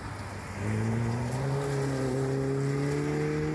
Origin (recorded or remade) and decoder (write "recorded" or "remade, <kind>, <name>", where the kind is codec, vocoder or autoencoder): recorded